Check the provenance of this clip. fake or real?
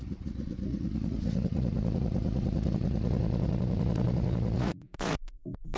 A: fake